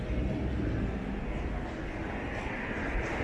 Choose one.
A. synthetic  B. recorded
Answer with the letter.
B